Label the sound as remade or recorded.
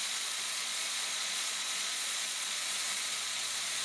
remade